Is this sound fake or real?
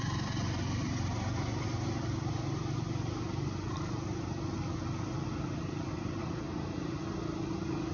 real